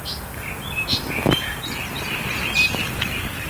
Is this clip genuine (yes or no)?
no